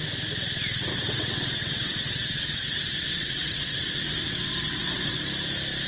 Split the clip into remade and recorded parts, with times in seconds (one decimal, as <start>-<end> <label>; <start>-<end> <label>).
0.0-0.9 recorded; 0.9-2.8 remade; 2.8-3.2 recorded; 3.2-5.2 remade; 5.2-5.9 recorded